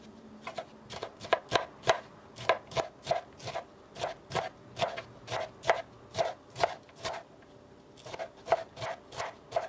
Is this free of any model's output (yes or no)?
yes